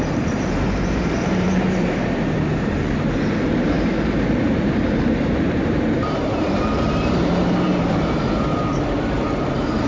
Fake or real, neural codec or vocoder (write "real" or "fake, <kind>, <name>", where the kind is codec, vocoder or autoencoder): fake, vocoder, BigVGAN v2